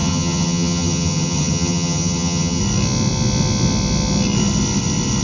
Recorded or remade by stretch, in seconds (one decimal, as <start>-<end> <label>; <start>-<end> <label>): 0.0-2.6 remade; 2.6-5.2 recorded